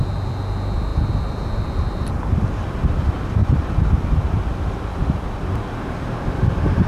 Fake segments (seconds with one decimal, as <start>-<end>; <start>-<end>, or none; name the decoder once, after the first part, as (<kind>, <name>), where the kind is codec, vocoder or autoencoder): none